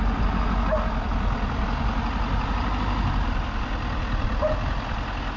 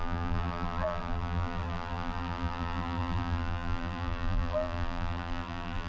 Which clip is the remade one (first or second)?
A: second